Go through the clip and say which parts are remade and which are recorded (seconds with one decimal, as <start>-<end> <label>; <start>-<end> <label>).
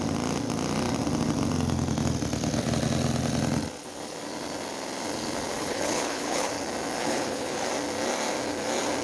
0.0-5.5 recorded; 5.5-6.5 remade; 6.5-7.0 recorded; 7.0-7.7 remade; 7.7-9.0 recorded